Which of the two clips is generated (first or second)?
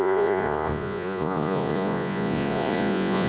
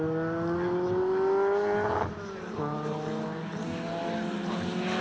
first